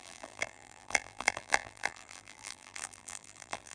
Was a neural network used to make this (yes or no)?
yes